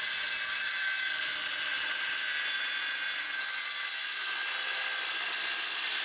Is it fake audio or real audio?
real